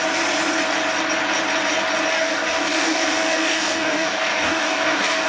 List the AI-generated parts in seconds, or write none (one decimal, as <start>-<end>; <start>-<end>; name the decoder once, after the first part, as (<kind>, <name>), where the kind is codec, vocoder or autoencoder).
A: 2.1-5.3 (codec, DAC)